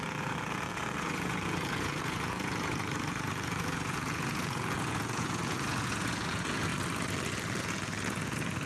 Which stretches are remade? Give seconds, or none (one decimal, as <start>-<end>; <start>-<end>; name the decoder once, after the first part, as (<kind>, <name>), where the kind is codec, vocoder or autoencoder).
0.0-6.7 (vocoder, Vocos); 7.6-8.7